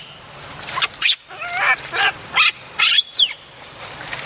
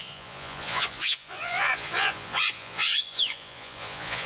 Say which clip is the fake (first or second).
second